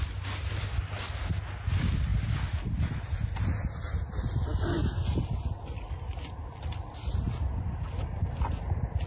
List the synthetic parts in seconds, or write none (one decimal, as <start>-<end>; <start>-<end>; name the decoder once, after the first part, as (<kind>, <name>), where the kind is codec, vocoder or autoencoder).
none